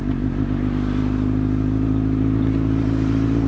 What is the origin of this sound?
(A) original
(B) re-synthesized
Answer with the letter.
A